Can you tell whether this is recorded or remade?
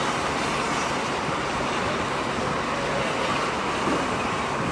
recorded